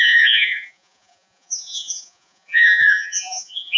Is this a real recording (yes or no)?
no